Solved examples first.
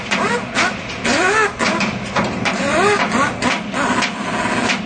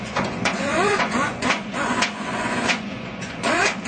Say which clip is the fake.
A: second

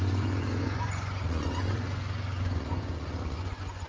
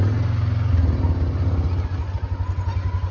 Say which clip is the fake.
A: first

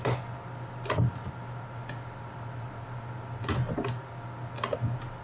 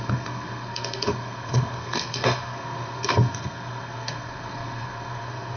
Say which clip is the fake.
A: second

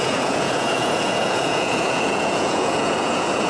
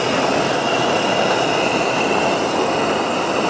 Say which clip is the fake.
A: first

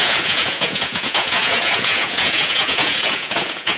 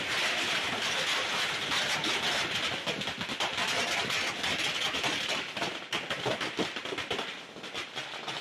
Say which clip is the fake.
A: first